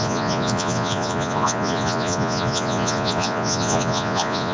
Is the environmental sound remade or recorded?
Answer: remade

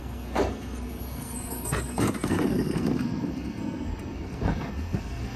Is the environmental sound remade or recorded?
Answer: remade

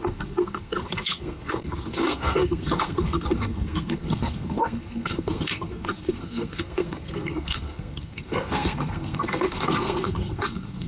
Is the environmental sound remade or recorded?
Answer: remade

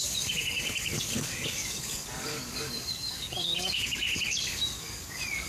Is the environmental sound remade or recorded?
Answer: remade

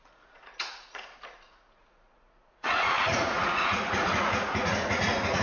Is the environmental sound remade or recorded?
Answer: remade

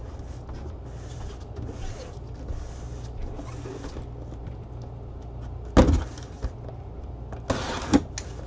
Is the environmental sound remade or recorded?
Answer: recorded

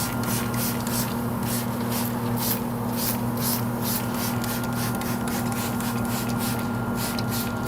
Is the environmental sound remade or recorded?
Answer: recorded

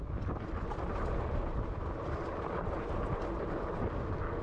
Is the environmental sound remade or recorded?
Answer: remade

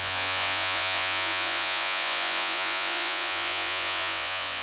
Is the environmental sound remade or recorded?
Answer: remade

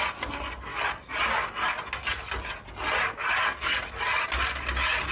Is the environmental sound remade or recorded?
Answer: recorded